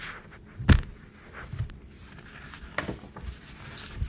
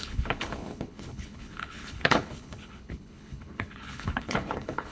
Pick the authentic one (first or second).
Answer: first